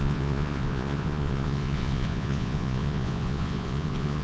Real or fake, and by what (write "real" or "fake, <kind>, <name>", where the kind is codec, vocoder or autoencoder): fake, vocoder, Vocos